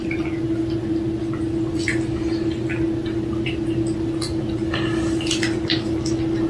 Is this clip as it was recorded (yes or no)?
yes